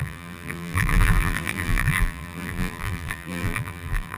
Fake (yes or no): yes